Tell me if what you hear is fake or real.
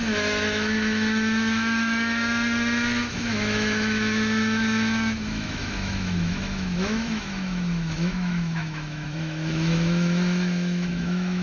fake